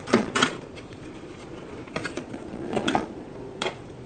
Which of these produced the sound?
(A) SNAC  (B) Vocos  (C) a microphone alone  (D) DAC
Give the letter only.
B